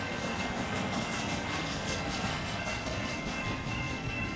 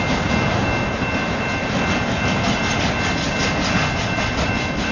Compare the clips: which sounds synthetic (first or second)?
first